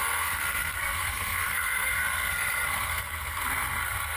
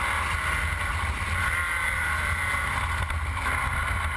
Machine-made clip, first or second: first